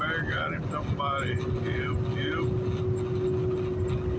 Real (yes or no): yes